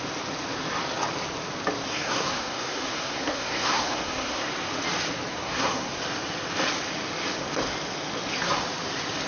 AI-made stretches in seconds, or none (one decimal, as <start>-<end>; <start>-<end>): 1.9-4.5; 5.3-6.0